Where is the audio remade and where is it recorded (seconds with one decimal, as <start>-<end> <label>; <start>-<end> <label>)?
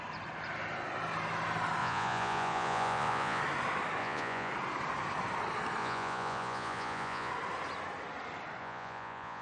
0.0-1.8 recorded; 1.8-3.4 remade; 3.4-4.0 recorded; 4.0-4.5 remade; 4.5-5.8 recorded; 5.8-7.3 remade; 7.3-8.6 recorded; 8.6-9.4 remade